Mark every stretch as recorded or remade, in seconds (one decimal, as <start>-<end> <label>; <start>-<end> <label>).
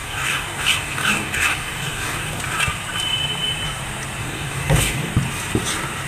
0.0-2.4 remade; 2.4-4.2 recorded; 4.2-5.1 remade; 5.1-6.1 recorded